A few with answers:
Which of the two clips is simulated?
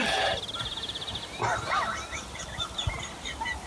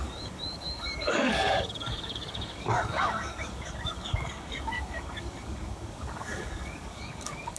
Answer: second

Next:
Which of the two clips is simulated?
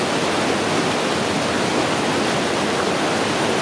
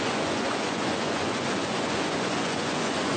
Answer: second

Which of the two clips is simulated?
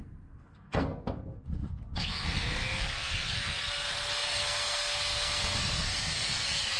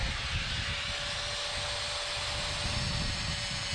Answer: first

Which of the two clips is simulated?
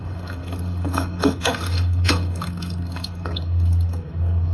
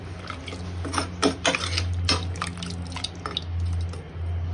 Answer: first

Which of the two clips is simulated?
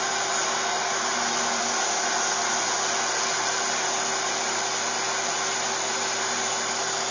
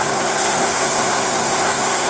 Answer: second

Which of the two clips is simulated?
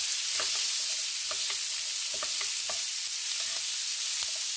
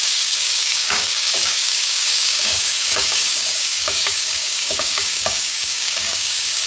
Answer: second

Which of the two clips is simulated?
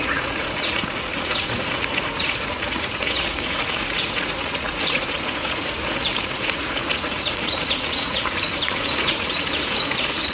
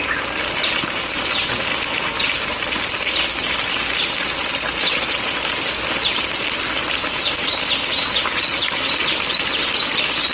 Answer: first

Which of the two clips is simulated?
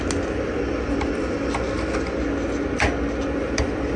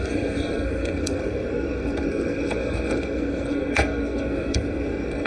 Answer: second